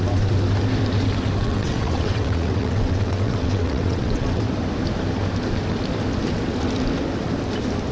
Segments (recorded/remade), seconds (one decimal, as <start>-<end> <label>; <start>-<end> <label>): 0.0-1.4 recorded; 1.4-4.4 remade; 4.4-7.9 recorded